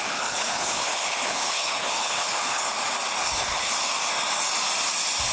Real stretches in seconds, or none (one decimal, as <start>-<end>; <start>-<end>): 2.6-3.2; 3.7-5.3